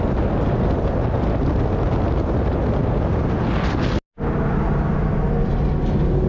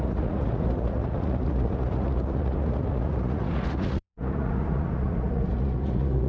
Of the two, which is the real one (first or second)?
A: first